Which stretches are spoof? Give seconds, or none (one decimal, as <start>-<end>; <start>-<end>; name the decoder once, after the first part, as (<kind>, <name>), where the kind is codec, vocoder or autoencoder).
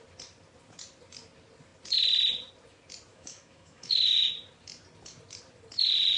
3.1-4.3 (autoencoder, DAC-VAE)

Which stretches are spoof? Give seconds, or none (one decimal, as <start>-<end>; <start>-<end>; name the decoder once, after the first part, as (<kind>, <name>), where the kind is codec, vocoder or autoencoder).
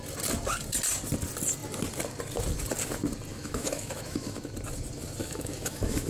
3.3-4.5 (autoencoder, DAC-VAE); 5.2-6.1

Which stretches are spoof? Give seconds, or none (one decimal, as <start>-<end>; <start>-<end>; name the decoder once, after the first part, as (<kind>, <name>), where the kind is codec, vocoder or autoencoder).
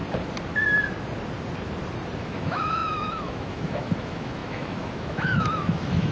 2.2-6.1 (autoencoder, DAC-VAE)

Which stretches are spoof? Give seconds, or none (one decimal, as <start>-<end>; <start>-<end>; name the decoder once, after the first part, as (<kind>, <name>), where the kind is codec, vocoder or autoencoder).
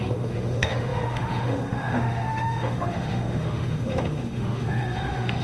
0.0-5.4 (autoencoder, DAC-VAE)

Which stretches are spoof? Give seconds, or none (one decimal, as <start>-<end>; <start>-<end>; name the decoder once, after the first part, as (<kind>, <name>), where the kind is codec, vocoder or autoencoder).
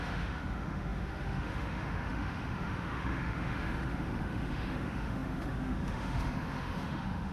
0.0-7.3 (autoencoder, DAC-VAE)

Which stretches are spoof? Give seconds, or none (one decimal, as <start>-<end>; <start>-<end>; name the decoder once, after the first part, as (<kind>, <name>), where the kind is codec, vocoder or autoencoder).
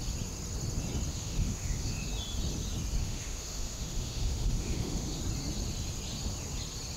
1.1-2.1 (autoencoder, DAC-VAE); 3.0-5.2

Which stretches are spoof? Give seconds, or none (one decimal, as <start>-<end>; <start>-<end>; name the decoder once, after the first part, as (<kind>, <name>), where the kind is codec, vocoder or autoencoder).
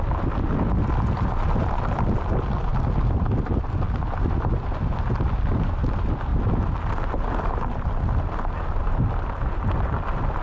none